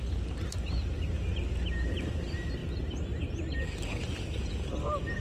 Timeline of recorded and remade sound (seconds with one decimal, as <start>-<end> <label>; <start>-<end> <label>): 0.0-5.2 recorded